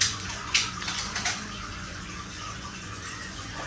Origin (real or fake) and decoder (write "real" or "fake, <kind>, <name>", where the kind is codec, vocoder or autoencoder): fake, vocoder, Vocos